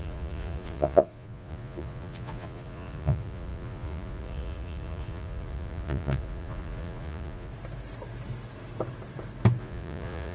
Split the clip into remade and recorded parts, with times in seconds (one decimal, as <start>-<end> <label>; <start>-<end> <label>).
0.0-7.5 remade; 7.5-9.6 recorded; 9.6-10.3 remade